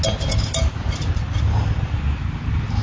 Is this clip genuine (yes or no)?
yes